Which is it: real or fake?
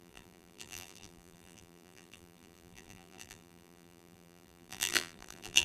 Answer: fake